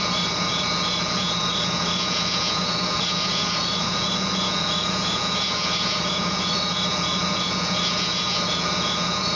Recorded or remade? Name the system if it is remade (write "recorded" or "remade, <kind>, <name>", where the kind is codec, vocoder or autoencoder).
remade, vocoder, Vocos